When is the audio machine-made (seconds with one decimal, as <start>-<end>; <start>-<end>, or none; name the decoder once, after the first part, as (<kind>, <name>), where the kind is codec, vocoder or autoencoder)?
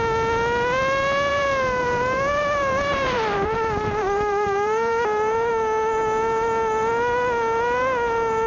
1.3-5.5 (vocoder, BigVGAN v2)